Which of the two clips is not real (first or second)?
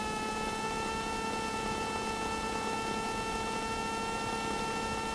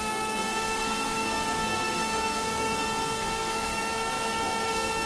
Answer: second